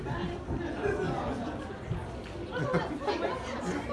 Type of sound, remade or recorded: recorded